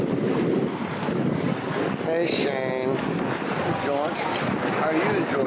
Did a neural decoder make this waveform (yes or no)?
no